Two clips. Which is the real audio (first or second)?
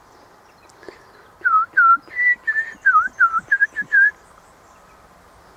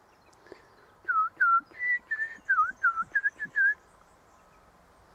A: second